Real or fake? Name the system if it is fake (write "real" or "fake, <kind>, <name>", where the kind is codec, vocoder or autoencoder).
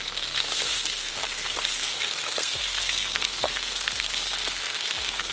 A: fake, codec, SNAC